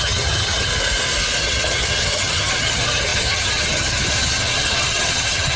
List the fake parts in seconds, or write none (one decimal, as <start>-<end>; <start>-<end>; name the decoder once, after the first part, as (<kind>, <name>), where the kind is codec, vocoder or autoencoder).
0.0-0.7 (vocoder, HiFi-GAN); 1.4-5.6